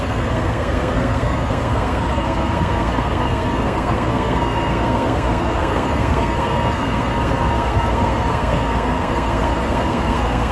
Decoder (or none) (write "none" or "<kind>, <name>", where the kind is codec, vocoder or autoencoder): codec, SNAC